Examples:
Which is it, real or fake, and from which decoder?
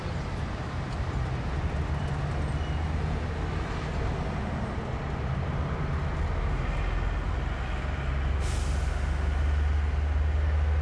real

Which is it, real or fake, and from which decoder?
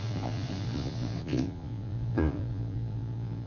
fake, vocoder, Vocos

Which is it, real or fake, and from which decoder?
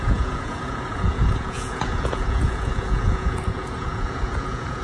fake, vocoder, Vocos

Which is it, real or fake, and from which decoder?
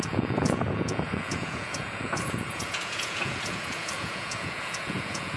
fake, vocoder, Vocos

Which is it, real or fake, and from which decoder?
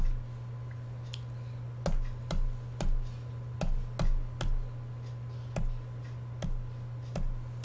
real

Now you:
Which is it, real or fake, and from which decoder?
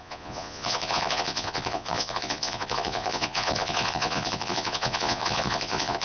fake, vocoder, Vocos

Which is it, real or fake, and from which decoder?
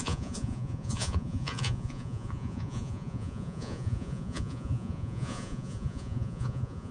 fake, vocoder, Vocos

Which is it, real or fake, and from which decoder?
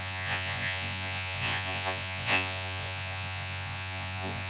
fake, vocoder, Vocos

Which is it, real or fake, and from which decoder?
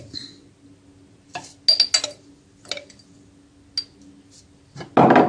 real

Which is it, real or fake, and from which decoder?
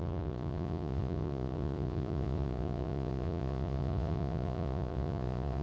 fake, vocoder, Vocos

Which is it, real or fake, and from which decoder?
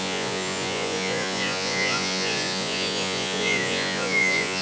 fake, vocoder, Vocos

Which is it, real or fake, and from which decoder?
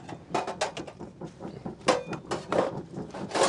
real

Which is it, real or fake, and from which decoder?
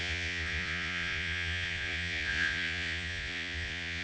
fake, vocoder, Vocos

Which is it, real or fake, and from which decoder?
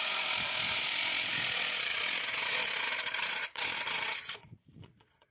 fake, vocoder, Vocos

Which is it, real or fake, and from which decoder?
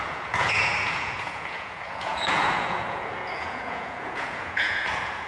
fake, vocoder, Vocos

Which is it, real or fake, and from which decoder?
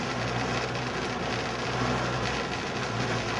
real